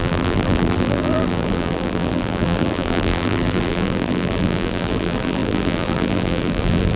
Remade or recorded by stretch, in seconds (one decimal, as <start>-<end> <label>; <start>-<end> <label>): 0.0-7.0 remade